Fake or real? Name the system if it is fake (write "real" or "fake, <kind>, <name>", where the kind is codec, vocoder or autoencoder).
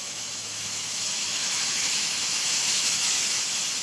fake, autoencoder, DAC-VAE